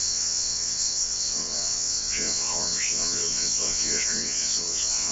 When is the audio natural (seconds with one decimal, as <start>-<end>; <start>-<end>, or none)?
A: none